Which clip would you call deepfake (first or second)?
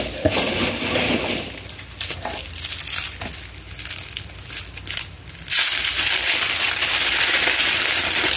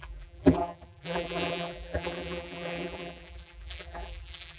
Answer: second